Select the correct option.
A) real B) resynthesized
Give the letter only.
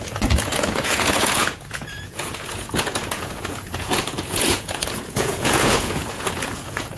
B